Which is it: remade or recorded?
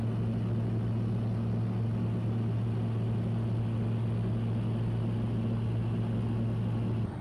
recorded